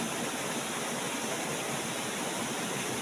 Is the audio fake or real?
real